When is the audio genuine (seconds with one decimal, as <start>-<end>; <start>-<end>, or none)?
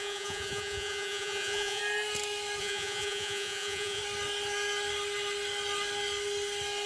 1.8-2.6; 4.0-6.9